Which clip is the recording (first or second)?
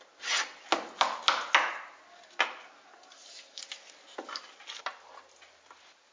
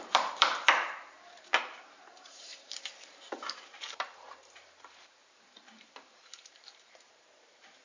first